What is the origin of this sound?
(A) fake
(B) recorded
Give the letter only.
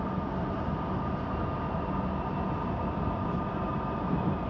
B